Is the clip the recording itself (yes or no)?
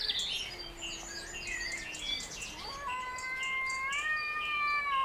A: yes